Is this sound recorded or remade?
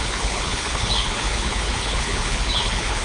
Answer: remade